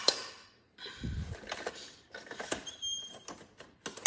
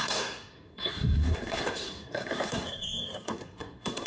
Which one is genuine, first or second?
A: first